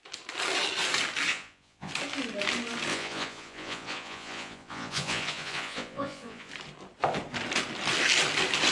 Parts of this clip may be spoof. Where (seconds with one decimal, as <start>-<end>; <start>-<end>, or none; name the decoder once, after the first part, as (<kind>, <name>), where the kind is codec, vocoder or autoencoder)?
1.3-1.9 (vocoder, Vocos); 2.9-6.5